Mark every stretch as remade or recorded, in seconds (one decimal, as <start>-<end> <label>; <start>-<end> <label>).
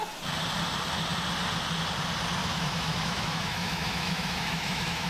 0.0-2.4 recorded; 2.4-5.1 remade